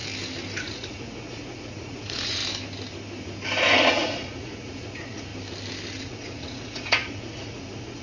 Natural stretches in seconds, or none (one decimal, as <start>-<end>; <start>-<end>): 0.0-0.6; 2.4-3.8; 5.3-6.0